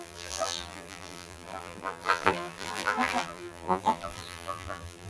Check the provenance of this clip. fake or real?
fake